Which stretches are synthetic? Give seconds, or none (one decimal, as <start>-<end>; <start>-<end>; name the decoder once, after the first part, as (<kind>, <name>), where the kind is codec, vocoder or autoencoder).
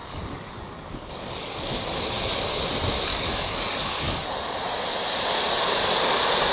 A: 0.0-2.0 (codec, DAC); 3.1-4.4